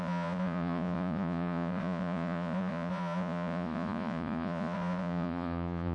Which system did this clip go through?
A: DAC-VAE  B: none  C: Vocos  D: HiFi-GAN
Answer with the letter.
C